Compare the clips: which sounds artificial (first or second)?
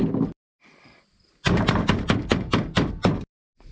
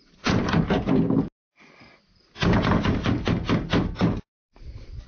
first